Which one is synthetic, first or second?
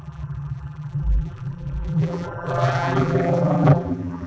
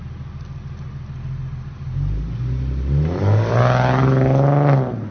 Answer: first